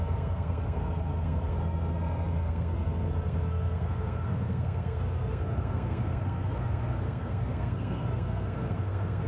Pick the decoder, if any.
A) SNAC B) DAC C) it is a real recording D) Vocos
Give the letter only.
A